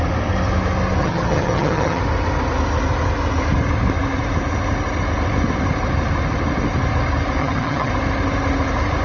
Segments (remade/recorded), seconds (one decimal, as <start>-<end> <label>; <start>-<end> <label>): 0.0-1.0 recorded; 1.0-2.0 remade; 2.0-7.4 recorded; 7.4-7.9 remade; 7.9-9.0 recorded

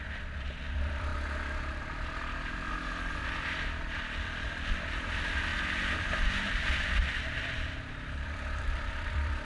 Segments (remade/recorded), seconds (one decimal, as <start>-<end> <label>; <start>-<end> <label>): 0.0-1.1 remade; 1.1-2.7 recorded; 2.7-9.4 remade

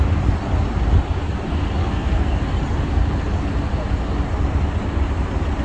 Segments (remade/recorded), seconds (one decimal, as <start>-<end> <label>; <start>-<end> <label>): 0.0-1.8 recorded; 1.8-2.3 remade; 2.3-5.6 recorded

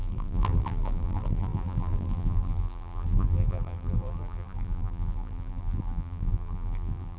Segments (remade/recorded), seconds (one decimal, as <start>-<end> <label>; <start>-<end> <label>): 0.0-7.2 remade

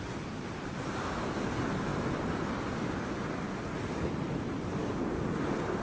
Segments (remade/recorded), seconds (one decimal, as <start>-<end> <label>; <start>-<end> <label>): 0.0-5.8 recorded

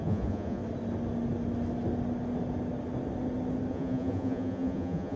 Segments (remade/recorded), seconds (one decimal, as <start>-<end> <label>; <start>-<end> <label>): 0.0-0.6 remade; 0.6-3.7 recorded; 3.7-5.2 remade